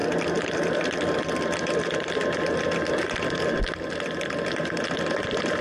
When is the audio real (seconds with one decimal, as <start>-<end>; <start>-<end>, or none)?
0.0-5.6